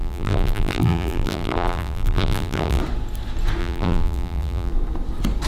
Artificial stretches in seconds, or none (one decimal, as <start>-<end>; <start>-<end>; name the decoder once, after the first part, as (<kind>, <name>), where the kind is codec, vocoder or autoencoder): 0.0-2.8 (vocoder, BigVGAN v2); 3.6-4.7